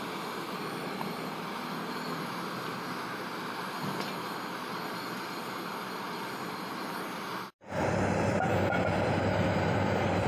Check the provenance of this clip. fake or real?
real